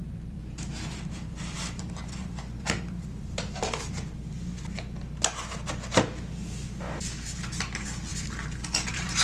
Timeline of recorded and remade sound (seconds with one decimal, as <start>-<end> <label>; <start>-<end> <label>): 0.0-3.9 remade; 3.9-8.1 recorded; 8.1-9.2 remade